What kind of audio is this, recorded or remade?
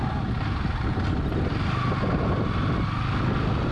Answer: recorded